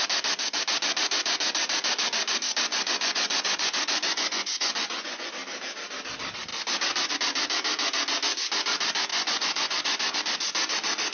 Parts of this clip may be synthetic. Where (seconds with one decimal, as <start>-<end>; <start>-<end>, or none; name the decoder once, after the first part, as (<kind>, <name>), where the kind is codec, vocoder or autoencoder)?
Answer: 2.7-5.3 (vocoder, Vocos); 9.1-10.2